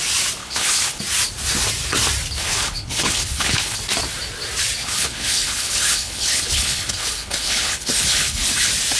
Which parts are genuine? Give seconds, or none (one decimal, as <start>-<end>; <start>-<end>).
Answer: 0.0-0.4; 1.0-2.4; 3.8-4.8; 8.6-9.0